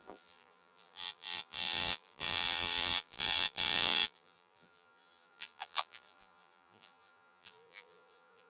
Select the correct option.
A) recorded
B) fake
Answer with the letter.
B